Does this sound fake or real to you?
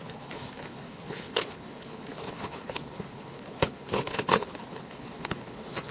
fake